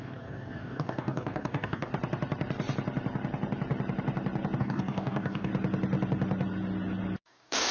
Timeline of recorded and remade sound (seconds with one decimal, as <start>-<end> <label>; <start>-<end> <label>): 0.0-1.9 remade; 1.9-4.6 recorded; 4.6-5.5 remade; 5.5-7.2 recorded; 7.2-7.7 remade